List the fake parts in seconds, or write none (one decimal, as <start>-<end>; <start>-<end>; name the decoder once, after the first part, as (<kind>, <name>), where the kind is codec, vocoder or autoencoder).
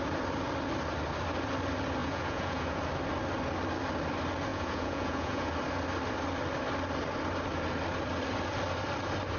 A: 2.0-2.8 (vocoder, Vocos); 4.5-5.5